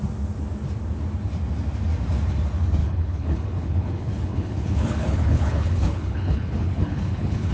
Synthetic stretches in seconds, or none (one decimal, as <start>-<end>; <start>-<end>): 2.8-7.5